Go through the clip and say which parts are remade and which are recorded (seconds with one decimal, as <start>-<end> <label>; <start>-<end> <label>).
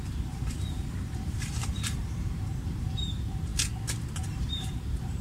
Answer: 0.0-3.5 remade; 3.5-4.2 recorded; 4.2-5.2 remade